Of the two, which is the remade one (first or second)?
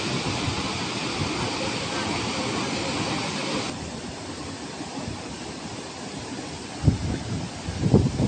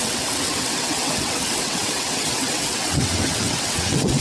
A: second